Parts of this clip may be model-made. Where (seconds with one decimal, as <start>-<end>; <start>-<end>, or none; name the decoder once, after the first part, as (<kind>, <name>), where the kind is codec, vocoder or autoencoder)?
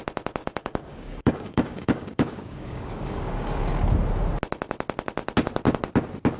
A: 0.4-3.7 (codec, DAC)